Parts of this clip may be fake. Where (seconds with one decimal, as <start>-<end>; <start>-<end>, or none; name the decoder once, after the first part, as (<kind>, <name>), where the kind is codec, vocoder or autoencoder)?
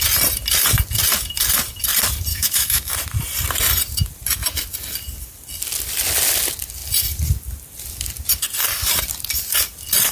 2.3-2.9 (autoencoder, DAC-VAE)